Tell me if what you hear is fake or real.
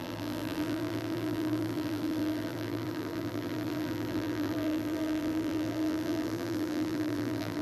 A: fake